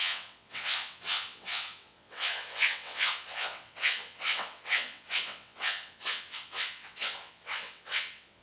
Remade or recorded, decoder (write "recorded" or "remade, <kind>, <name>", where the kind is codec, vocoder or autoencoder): remade, vocoder, WaveNeXt